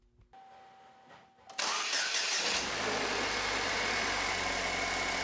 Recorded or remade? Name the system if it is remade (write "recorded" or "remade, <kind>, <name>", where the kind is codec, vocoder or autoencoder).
recorded